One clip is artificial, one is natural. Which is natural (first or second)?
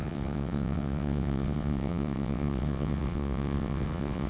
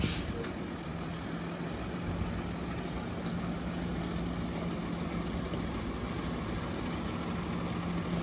second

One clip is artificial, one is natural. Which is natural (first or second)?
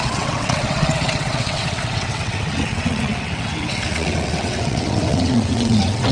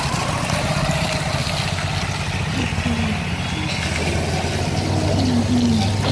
second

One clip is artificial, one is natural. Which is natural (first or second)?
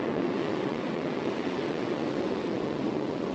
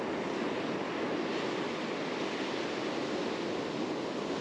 second